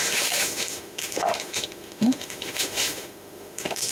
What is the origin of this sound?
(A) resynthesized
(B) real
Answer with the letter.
A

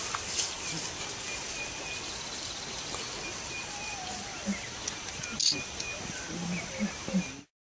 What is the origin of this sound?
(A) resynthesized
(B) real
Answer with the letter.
B